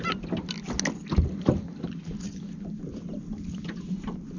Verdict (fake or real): real